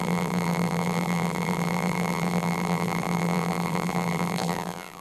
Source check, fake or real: fake